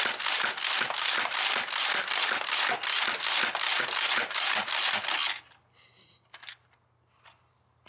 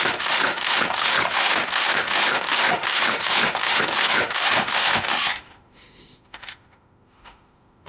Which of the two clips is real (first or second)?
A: first